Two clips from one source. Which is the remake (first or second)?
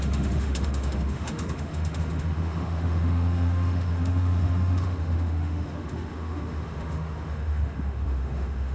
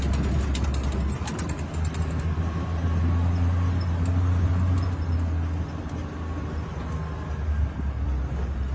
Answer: first